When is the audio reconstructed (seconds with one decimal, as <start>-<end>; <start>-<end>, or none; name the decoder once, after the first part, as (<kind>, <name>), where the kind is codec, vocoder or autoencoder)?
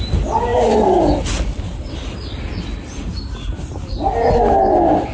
none